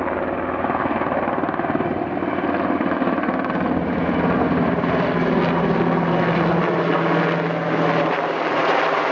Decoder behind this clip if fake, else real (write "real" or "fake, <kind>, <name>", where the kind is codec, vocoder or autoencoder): real